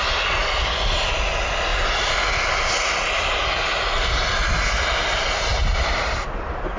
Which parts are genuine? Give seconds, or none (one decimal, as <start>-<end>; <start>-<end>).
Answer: 0.0-6.8